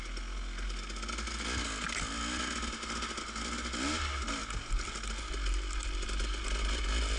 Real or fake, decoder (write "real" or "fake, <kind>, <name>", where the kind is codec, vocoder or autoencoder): real